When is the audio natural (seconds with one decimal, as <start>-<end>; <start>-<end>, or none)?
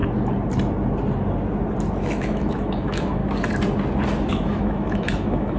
0.0-2.0; 3.2-4.3